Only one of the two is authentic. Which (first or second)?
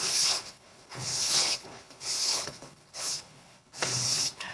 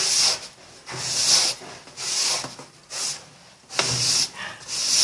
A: second